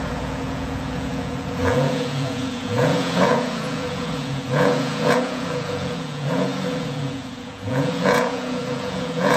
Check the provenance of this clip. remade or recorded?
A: remade